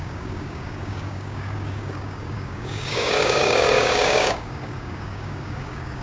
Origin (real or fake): fake